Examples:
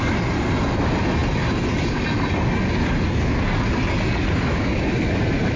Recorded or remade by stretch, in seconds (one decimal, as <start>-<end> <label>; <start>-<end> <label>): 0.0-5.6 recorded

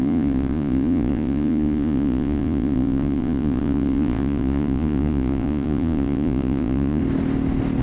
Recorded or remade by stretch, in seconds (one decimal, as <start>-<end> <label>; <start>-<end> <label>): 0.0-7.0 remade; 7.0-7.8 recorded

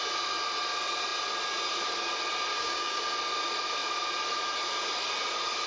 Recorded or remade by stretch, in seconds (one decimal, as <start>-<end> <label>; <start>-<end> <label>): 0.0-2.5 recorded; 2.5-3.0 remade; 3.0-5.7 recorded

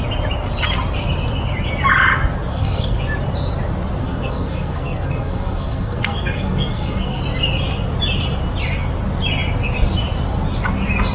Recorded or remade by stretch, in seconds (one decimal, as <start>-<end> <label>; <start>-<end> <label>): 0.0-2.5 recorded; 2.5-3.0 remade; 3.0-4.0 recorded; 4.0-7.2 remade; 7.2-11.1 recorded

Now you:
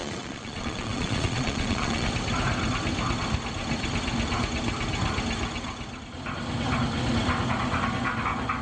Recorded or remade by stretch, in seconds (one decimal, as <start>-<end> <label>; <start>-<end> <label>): 0.0-2.1 remade; 2.1-8.6 recorded

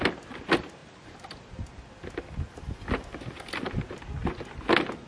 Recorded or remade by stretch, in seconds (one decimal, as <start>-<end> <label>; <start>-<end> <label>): 0.0-5.1 recorded

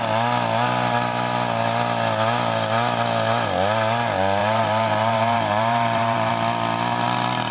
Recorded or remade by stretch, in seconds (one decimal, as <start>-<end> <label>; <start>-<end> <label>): 0.0-4.4 recorded; 4.4-6.3 remade; 6.3-7.5 recorded